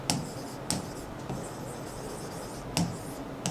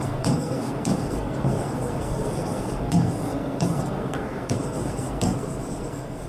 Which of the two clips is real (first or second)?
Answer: first